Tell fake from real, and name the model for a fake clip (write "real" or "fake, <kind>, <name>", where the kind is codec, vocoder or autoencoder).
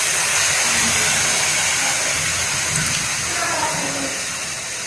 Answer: real